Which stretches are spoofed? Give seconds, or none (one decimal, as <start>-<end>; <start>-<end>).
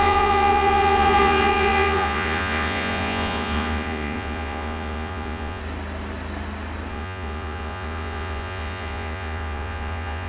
0.0-5.6; 6.9-10.3